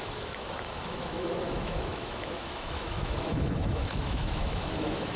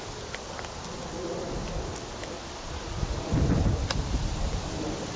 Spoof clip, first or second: first